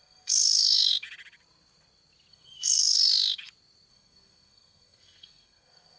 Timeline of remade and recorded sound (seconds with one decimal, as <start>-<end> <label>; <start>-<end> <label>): 0.0-0.9 remade; 0.9-2.3 recorded; 2.3-3.0 remade; 3.0-3.9 recorded; 3.9-6.0 remade